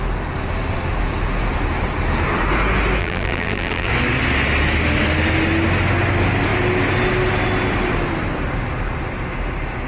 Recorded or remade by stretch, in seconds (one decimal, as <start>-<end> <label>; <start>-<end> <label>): 0.0-3.0 recorded; 3.0-3.9 remade; 3.9-9.9 recorded